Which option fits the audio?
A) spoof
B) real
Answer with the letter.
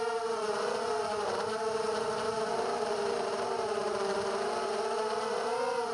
A